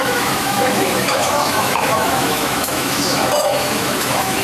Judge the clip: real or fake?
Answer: fake